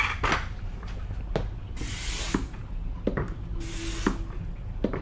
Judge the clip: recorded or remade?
recorded